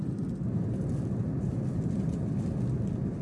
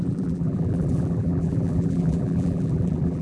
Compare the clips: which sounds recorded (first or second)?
first